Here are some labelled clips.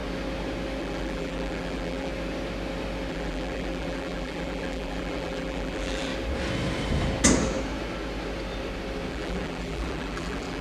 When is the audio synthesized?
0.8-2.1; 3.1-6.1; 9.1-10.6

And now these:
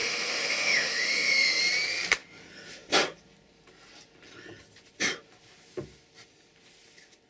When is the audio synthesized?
0.0-1.6

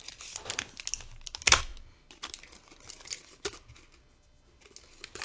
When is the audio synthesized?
none

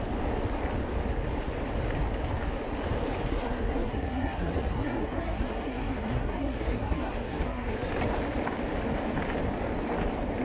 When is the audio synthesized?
3.3-7.9

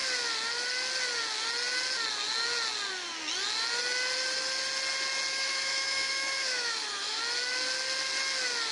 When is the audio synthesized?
5.3-7.2

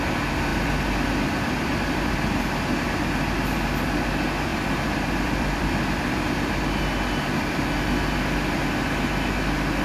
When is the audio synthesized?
0.5-2.4; 4.5-5.7